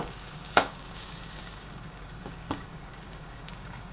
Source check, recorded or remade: remade